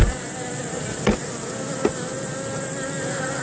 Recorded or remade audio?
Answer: recorded